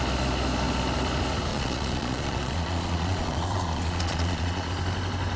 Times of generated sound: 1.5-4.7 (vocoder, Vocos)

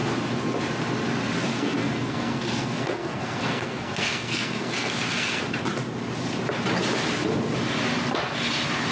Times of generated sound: 1.5-5.4 (codec, SNAC)